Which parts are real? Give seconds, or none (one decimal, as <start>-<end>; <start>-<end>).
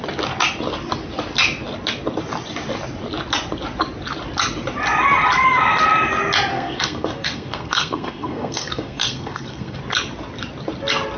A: 0.0-6.5; 9.8-11.2